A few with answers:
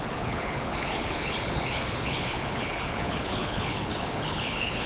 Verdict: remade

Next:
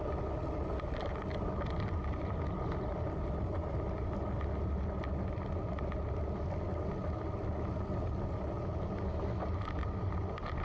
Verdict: recorded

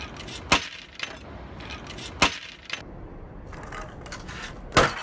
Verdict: recorded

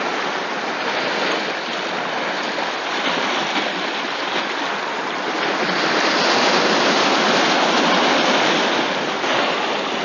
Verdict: recorded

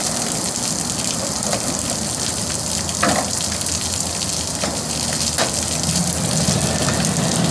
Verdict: recorded